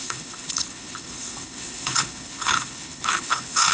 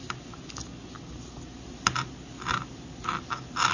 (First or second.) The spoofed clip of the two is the first